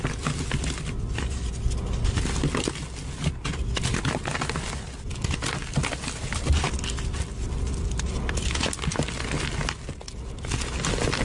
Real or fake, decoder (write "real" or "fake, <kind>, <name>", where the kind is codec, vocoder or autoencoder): real